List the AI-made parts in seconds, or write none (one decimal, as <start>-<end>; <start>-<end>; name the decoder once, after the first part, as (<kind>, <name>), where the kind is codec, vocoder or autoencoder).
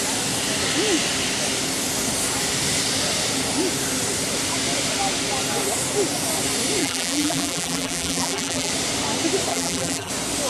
6.8-8.7 (vocoder, BigVGAN v2); 9.5-10.1